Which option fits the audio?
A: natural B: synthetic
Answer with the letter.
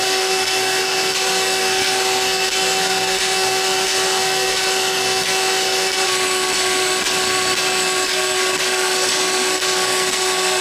B